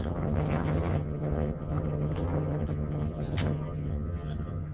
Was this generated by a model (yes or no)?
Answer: yes